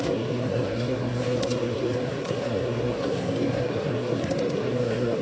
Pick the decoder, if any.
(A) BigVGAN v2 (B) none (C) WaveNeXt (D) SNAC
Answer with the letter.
D